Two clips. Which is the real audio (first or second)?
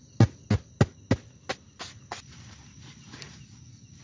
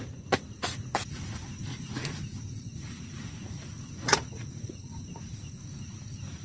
first